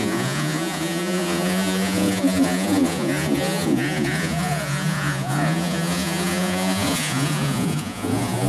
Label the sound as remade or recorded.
remade